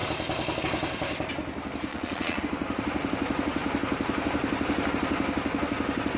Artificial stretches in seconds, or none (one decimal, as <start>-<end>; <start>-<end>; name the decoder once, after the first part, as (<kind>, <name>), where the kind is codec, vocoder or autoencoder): 1.9-2.4 (vocoder, Vocos)